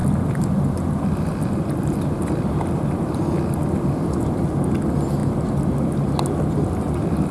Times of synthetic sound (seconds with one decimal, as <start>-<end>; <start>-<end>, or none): none